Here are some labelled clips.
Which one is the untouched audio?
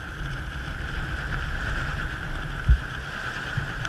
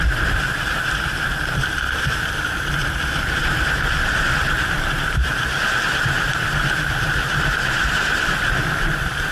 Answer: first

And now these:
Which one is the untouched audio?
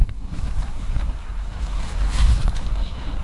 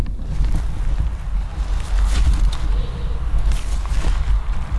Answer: second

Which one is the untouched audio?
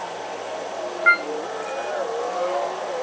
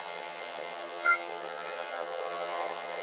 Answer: first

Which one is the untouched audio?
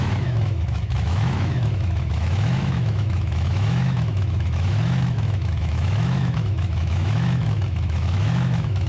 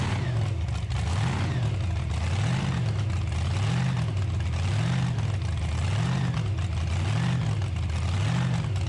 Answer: second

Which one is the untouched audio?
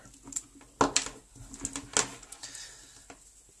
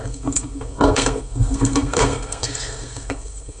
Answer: first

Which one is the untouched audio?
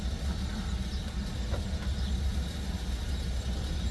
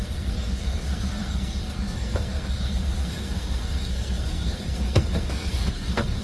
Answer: first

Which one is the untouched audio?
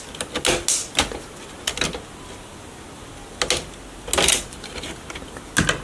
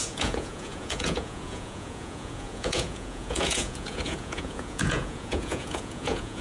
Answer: first